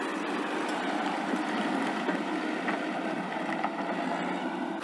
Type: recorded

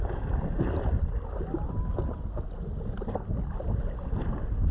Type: recorded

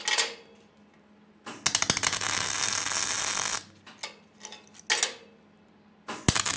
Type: recorded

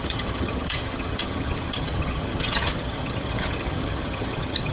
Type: remade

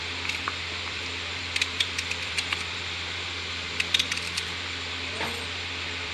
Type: remade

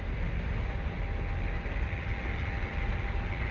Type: recorded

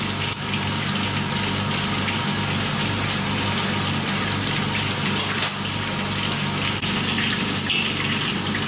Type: recorded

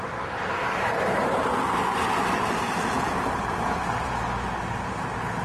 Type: recorded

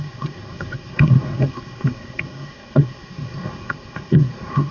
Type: remade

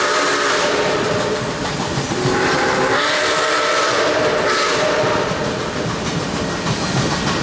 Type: recorded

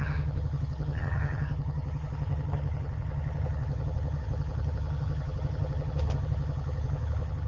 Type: remade